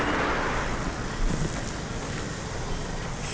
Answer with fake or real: real